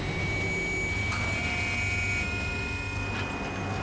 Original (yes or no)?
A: yes